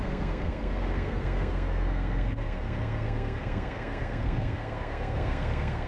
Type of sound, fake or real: fake